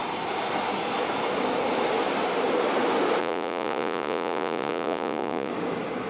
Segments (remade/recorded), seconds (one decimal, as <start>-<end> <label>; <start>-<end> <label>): 0.0-3.2 recorded; 3.2-5.5 remade; 5.5-6.1 recorded